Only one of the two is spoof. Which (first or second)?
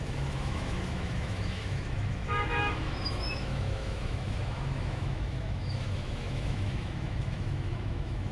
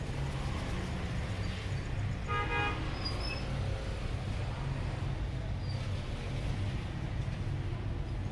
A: first